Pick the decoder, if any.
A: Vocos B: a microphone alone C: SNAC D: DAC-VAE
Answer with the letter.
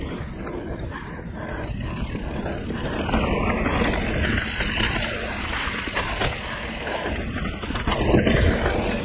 B